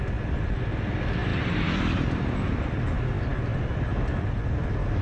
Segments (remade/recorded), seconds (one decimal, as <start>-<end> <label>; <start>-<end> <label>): 0.0-1.3 recorded; 1.3-2.7 remade; 2.7-5.0 recorded